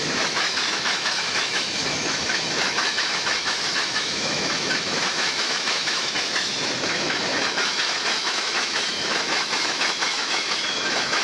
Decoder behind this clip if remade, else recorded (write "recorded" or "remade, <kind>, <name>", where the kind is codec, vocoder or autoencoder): remade, autoencoder, DAC-VAE